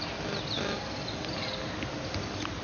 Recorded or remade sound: recorded